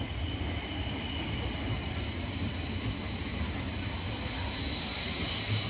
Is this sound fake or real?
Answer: real